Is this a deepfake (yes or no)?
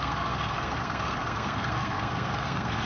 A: yes